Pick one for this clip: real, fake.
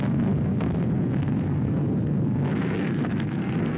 fake